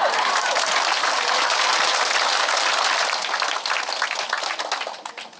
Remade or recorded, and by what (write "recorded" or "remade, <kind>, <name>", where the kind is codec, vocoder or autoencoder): recorded